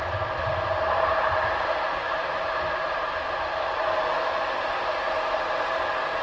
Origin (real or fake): real